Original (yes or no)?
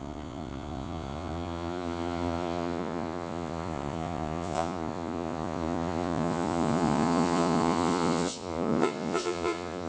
no